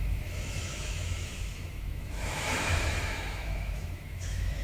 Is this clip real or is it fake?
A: fake